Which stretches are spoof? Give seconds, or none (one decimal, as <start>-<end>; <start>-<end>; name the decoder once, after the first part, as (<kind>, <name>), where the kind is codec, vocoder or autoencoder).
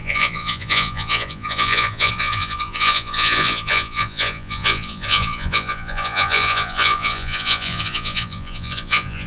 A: 0.0-9.3 (vocoder, Vocos)